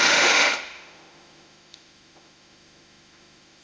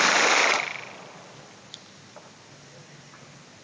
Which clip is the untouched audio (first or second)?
second